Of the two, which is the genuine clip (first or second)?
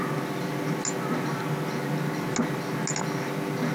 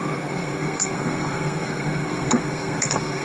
first